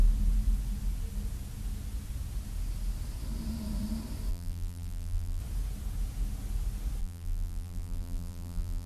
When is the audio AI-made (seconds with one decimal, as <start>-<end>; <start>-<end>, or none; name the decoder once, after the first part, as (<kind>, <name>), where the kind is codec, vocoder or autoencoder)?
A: 4.3-5.4 (vocoder, BigVGAN v2); 7.0-8.9